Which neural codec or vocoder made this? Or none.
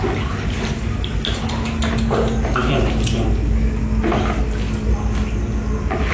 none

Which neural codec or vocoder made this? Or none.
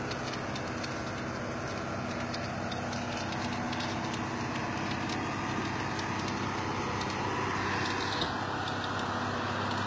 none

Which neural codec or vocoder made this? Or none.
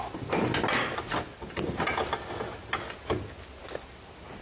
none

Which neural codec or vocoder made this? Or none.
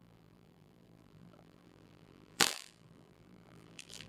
vocoder, BigVGAN v2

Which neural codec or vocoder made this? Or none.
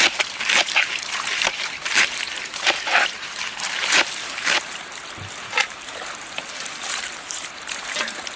vocoder, BigVGAN v2